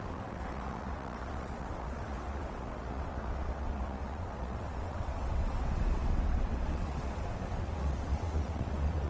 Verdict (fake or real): fake